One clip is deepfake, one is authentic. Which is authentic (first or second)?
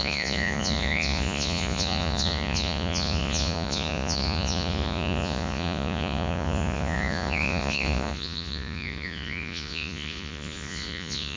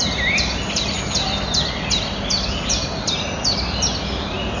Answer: second